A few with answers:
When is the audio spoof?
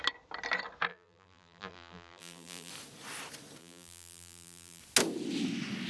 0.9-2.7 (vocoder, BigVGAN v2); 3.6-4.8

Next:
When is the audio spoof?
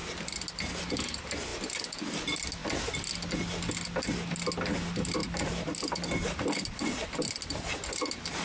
2.6-3.1 (vocoder, BigVGAN v2); 5.2-7.5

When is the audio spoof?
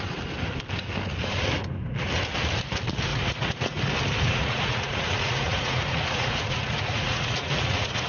3.1-3.8 (vocoder, Vocos); 4.3-8.1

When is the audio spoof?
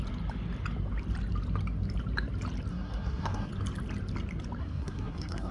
2.7-3.5 (codec, SNAC); 4.6-5.5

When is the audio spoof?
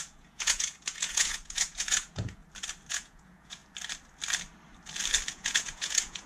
0.0-2.4 (vocoder, Vocos); 2.9-3.6; 5.3-6.3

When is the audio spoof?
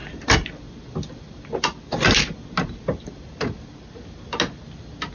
none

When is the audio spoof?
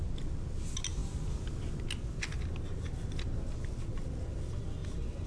none